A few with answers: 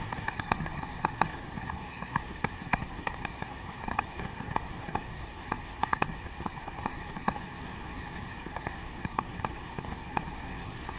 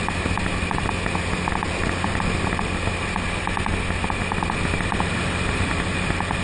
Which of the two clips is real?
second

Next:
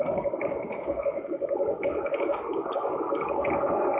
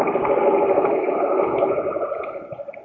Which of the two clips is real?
second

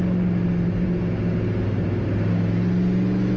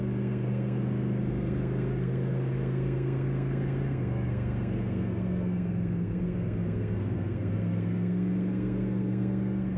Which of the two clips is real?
first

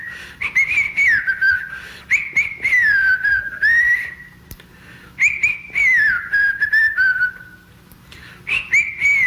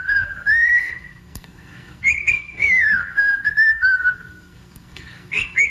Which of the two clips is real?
first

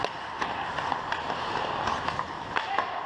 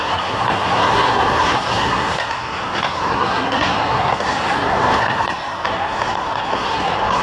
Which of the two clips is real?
first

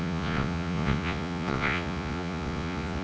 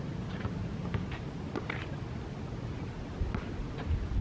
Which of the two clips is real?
second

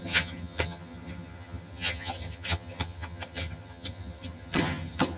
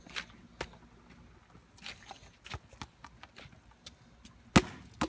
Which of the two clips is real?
second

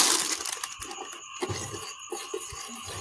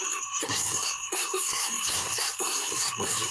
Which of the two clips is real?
first